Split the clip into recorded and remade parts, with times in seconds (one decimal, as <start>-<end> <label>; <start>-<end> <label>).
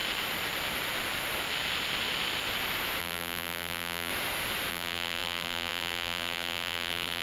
0.0-3.0 recorded; 3.0-4.1 remade; 4.1-4.7 recorded; 4.7-7.2 remade